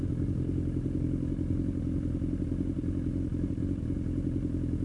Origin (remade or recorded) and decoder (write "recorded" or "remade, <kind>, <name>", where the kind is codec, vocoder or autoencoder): recorded